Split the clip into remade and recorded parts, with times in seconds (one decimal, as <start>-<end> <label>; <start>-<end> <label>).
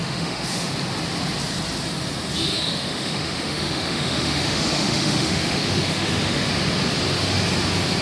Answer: 0.0-0.7 remade; 0.7-2.5 recorded; 2.5-6.5 remade; 6.5-8.0 recorded